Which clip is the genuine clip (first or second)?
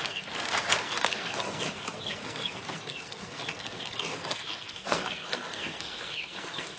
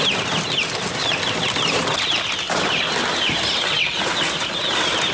second